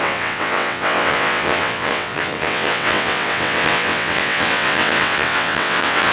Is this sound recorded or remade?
remade